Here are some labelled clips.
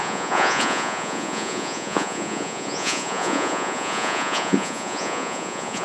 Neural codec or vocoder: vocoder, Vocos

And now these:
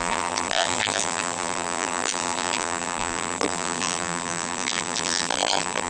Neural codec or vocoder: vocoder, BigVGAN v2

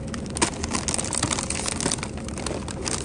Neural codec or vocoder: none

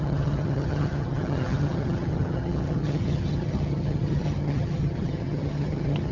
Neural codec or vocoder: vocoder, HiFi-GAN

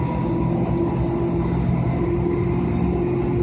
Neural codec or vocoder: none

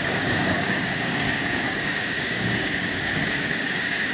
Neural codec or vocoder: codec, DAC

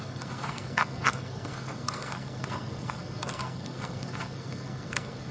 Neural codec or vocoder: codec, SNAC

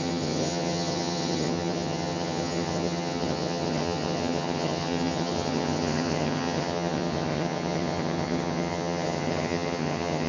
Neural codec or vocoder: vocoder, HiFi-GAN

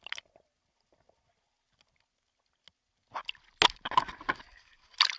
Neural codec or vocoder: none